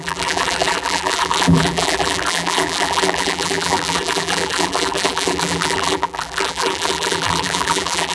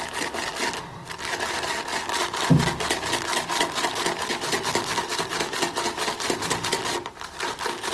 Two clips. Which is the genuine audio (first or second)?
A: second